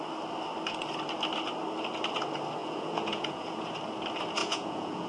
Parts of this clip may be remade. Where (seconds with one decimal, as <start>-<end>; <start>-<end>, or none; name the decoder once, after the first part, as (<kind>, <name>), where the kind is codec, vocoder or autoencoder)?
2.6-3.7 (vocoder, Vocos); 4.4-5.1